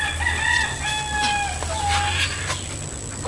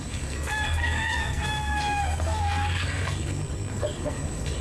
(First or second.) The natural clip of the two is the first